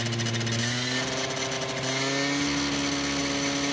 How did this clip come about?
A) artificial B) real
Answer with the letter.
B